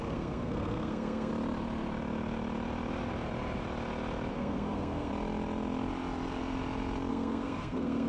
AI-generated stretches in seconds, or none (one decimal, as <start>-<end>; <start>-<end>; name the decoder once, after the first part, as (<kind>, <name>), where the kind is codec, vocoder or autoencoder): 0.0-1.3 (codec, SNAC); 4.3-5.1; 7.1-8.1